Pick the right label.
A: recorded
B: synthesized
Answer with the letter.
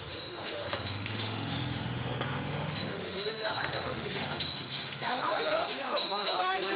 B